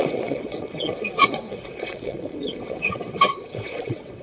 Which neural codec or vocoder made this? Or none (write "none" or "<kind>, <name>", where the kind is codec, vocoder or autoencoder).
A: vocoder, WaveNeXt